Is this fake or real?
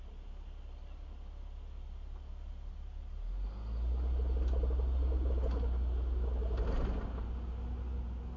real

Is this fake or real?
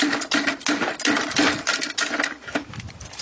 real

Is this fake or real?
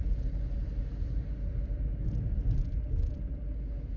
real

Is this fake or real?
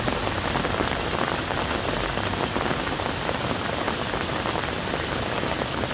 real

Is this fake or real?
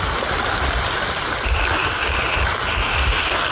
real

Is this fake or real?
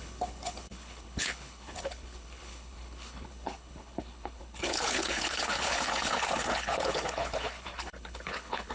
fake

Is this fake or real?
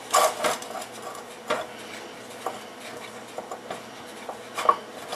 real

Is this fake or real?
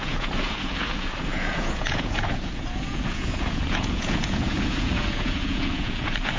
fake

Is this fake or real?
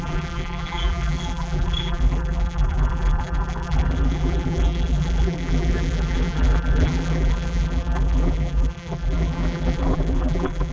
fake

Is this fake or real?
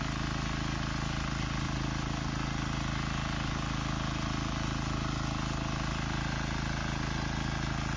real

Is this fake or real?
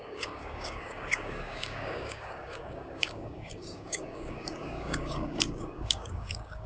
fake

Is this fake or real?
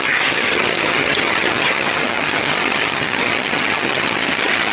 fake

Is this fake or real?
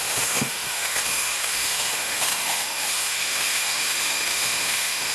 fake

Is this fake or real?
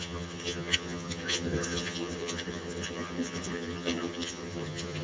fake